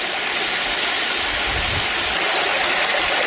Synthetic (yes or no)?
no